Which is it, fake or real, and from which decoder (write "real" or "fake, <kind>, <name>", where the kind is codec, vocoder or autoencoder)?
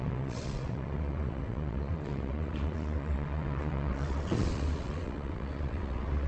fake, vocoder, WaveNeXt